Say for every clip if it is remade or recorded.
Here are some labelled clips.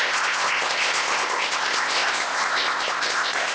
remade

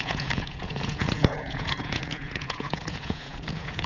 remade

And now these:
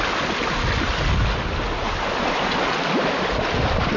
recorded